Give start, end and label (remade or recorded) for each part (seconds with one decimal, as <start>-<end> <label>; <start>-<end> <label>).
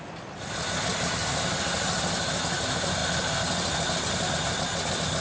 0.0-5.2 recorded